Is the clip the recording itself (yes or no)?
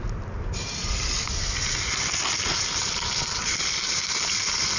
yes